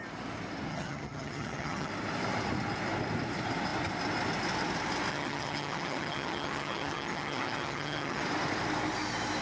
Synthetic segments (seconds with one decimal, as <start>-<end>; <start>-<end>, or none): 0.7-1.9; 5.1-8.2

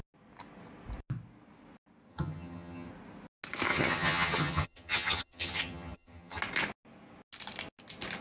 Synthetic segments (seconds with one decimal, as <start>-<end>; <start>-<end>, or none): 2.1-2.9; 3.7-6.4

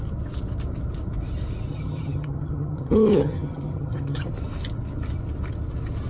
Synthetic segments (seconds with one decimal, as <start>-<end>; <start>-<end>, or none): 1.7-4.3

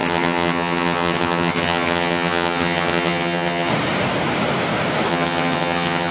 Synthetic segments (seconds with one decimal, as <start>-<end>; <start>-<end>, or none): 0.0-3.7; 5.1-6.1

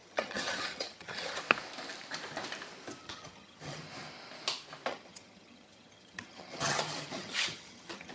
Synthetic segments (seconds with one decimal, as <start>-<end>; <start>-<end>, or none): 0.0-1.4; 3.0-3.8; 4.9-8.1

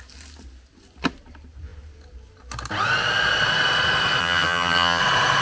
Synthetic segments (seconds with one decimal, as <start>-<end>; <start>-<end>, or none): 4.2-5.0